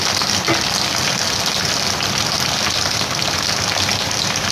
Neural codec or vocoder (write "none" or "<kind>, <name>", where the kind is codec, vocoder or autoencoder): none